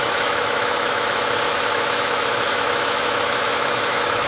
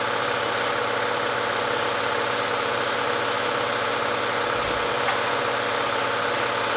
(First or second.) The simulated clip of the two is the first